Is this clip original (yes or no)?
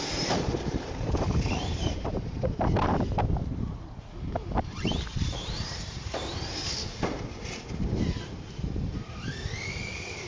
no